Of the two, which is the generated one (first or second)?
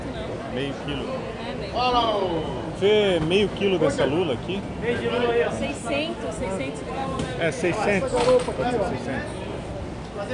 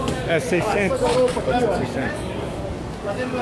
second